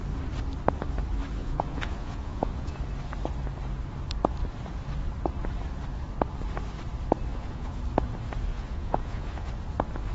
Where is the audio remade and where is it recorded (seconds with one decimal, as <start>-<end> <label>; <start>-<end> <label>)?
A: 0.0-1.4 recorded; 1.4-2.8 remade; 2.8-7.3 recorded; 7.3-7.8 remade; 7.8-8.5 recorded; 8.5-9.5 remade; 9.5-10.1 recorded